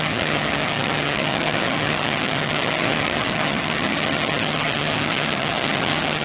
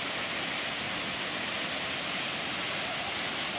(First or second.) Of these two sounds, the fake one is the first